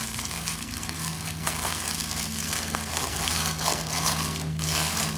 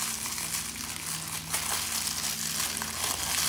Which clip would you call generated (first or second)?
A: first